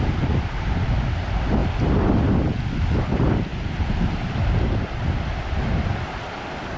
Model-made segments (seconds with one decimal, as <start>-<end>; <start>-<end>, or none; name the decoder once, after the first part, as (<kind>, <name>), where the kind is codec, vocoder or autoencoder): none